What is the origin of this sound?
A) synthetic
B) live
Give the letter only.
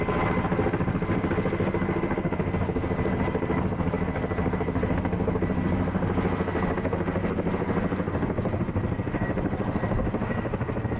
B